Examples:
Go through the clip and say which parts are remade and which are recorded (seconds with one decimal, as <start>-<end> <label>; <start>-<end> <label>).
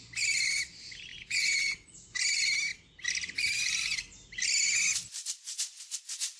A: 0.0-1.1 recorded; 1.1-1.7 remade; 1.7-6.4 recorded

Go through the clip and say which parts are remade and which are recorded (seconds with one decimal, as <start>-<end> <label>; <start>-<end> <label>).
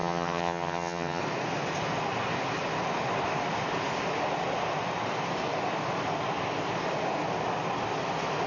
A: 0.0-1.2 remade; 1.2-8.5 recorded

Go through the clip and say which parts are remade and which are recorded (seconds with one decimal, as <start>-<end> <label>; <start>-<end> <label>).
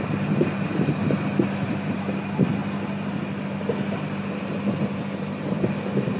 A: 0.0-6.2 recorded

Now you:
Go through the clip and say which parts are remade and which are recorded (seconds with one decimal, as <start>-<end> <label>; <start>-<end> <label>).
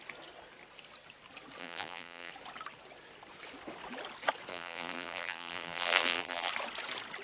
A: 0.0-1.6 recorded; 1.6-2.3 remade; 2.3-4.5 recorded; 4.5-6.5 remade; 6.5-7.2 recorded